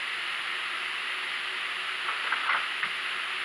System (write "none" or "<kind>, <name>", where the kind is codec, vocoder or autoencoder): none